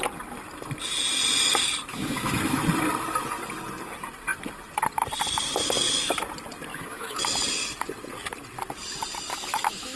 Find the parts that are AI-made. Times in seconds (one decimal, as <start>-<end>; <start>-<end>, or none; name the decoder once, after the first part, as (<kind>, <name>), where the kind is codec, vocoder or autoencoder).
1.9-2.6 (autoencoder, DAC-VAE); 6.7-7.2; 9.3-10.0